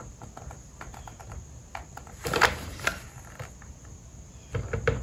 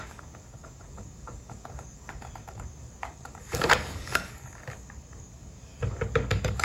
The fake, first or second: second